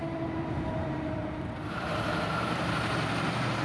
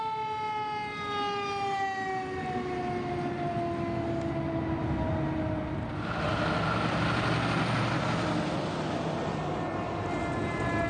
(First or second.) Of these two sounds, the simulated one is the first